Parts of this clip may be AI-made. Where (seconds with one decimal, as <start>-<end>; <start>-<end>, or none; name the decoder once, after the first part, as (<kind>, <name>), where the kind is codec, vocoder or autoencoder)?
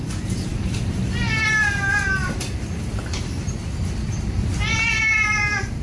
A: 2.2-3.5 (vocoder, BigVGAN v2)